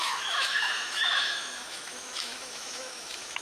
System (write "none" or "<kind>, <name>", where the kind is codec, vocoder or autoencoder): autoencoder, DAC-VAE